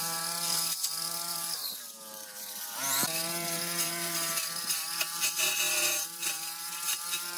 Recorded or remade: remade